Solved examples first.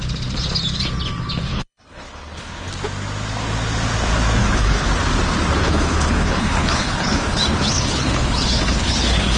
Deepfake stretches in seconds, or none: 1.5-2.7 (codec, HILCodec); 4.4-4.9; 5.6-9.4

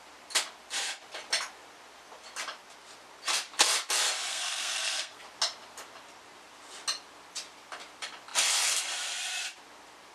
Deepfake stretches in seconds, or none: 4.3-5.2 (codec, SNAC)

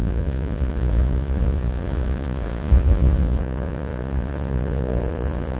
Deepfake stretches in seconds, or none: 0.0-5.6 (vocoder, Vocos)

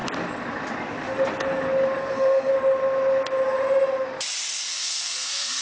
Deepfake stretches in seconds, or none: 2.1-2.5 (codec, SNAC); 4.7-5.6

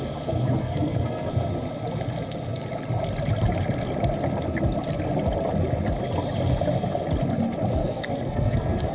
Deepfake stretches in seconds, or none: 0.6-1.3 (codec, SNAC); 7.8-8.9

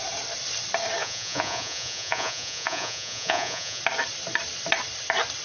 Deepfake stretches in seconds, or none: 1.0-3.8 (vocoder, Vocos)

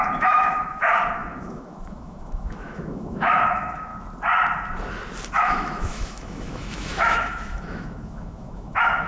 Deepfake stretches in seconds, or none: 0.0-3.9 (autoencoder, DAC-VAE); 5.4-9.1

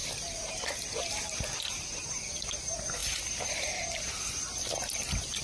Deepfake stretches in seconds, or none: none